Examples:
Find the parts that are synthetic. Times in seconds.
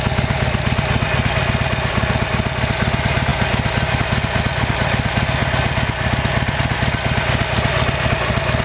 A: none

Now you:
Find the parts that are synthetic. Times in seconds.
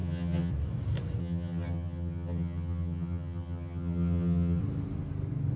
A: 0.0-0.5 (vocoder, HiFi-GAN); 1.2-4.6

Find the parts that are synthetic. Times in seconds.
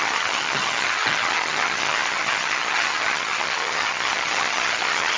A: 0.0-5.2 (vocoder, HiFi-GAN)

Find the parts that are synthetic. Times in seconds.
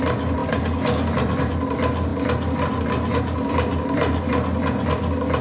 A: none